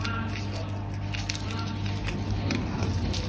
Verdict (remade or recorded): recorded